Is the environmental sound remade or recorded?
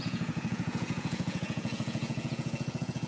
remade